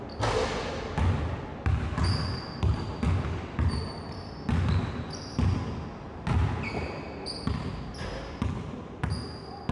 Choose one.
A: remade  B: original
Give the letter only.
B